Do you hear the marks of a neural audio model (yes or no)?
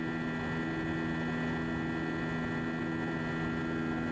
no